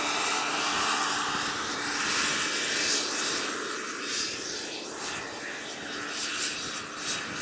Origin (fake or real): real